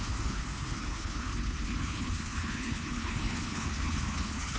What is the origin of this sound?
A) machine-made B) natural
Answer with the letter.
A